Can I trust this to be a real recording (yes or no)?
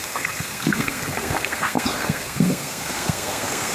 no